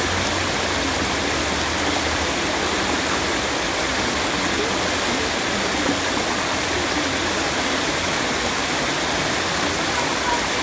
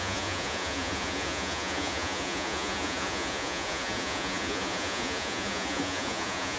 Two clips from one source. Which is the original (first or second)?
first